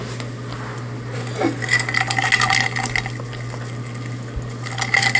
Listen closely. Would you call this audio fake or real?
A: real